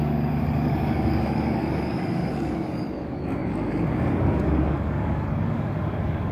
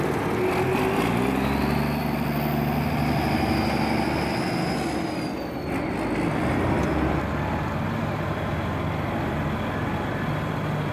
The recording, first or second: second